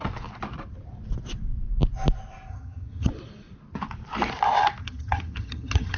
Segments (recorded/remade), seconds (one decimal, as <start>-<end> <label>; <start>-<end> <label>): 0.0-2.5 recorded; 2.5-3.1 remade; 3.1-4.8 recorded; 4.8-6.0 remade